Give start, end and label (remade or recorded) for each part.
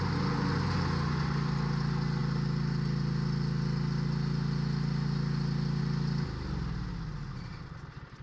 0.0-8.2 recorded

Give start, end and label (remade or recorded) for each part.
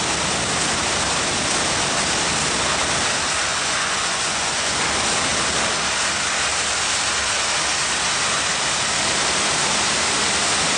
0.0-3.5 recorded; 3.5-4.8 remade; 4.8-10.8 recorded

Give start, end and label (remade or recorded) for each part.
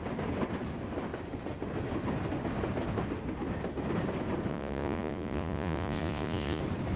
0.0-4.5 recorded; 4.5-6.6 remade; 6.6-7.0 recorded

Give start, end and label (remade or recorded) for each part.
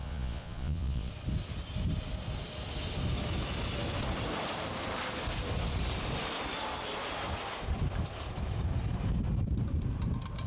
0.0-1.1 remade; 1.1-10.5 recorded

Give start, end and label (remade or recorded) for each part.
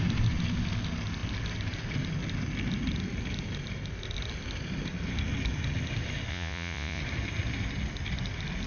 0.0-6.3 recorded; 6.3-7.0 remade; 7.0-8.7 recorded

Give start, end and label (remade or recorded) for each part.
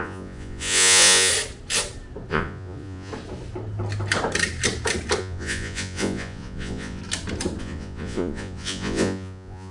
0.0-1.3 remade; 1.3-2.3 recorded; 2.3-3.1 remade; 3.1-5.2 recorded; 5.2-7.0 remade; 7.0-7.6 recorded; 7.6-9.7 remade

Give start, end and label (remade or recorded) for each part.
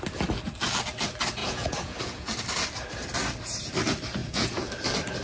0.0-1.4 recorded; 1.4-2.3 remade; 2.3-4.2 recorded; 4.2-4.7 remade; 4.7-5.2 recorded